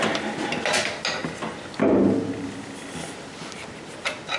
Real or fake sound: real